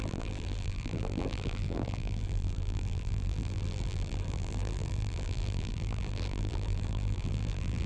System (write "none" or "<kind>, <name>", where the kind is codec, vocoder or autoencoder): vocoder, BigVGAN v2